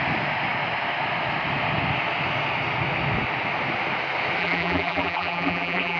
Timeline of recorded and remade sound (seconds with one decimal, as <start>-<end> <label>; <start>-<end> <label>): 0.0-4.4 recorded; 4.4-6.0 remade